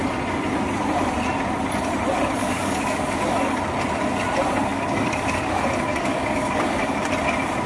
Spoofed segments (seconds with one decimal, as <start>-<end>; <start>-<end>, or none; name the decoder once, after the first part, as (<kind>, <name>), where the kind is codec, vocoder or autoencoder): 2.4-3.6 (codec, DAC); 4.7-5.5; 5.9-7.0